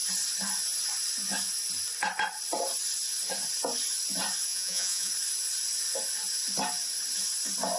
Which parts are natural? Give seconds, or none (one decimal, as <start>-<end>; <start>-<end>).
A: 0.0-4.5; 5.1-7.8